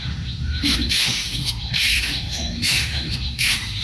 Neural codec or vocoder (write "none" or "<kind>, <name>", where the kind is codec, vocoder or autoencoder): autoencoder, DAC-VAE